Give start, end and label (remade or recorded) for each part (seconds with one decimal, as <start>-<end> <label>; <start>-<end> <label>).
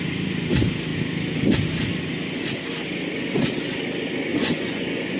0.0-4.3 recorded; 4.3-5.2 remade